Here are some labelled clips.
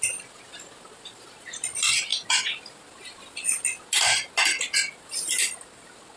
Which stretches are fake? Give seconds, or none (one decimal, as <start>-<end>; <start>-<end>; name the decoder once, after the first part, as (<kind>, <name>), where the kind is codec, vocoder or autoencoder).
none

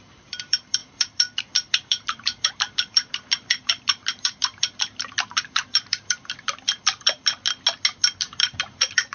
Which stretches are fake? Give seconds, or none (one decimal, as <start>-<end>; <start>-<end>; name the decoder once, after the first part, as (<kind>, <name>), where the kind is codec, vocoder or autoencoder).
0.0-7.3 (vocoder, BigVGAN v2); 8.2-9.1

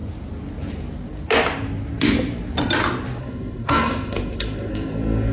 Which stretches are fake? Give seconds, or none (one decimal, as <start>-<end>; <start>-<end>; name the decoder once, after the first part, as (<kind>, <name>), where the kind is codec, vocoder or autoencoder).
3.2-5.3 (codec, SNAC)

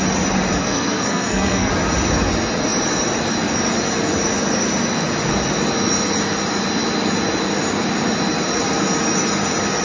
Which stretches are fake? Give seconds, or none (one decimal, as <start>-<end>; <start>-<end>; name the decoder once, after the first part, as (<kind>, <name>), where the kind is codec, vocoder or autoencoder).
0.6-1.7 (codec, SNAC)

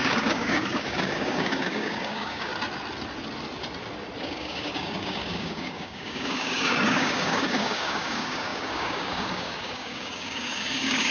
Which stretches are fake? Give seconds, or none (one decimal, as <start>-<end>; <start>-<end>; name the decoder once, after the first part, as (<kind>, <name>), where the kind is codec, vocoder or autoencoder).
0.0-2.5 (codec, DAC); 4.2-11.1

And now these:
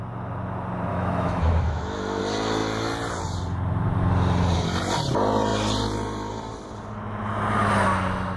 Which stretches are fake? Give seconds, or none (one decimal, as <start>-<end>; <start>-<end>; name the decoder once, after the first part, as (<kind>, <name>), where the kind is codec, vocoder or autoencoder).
0.9-2.2 (autoencoder, DAC-VAE)

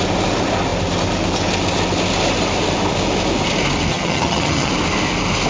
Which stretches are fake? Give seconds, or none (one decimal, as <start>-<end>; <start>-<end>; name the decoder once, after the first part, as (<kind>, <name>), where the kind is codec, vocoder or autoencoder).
3.9-4.7 (vocoder, HiFi-GAN)